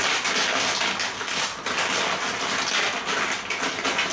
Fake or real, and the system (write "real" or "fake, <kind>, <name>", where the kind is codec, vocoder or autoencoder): real